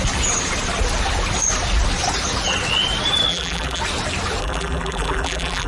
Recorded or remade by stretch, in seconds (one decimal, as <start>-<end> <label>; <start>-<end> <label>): 0.0-3.3 recorded; 3.3-3.8 remade; 3.8-4.4 recorded; 4.4-5.7 remade